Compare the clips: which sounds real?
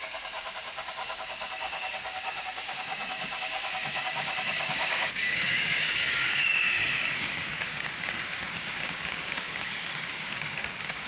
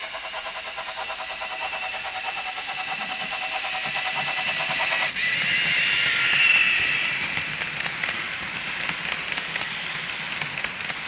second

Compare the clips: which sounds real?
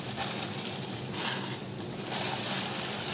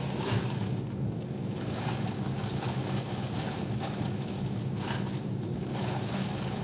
first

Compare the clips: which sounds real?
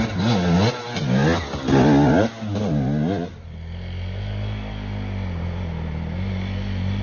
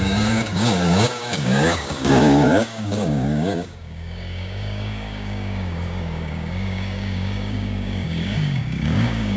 first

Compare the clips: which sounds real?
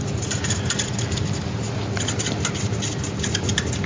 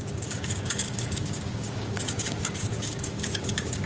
first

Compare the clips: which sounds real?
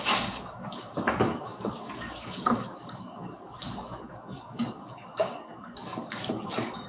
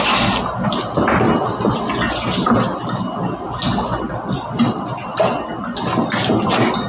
second